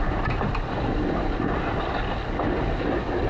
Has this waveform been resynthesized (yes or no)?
no